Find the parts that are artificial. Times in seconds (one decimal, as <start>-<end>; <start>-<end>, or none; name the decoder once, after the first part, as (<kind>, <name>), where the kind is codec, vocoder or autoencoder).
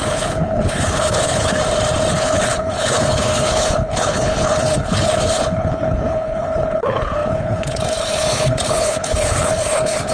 0.0-1.6 (codec, HILCodec); 2.1-10.1